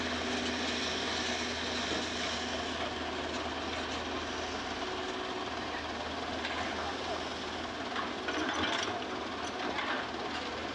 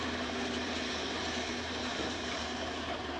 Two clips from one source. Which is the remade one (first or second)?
second